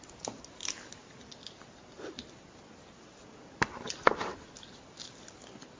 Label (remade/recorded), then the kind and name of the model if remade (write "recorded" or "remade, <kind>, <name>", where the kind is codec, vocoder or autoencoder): recorded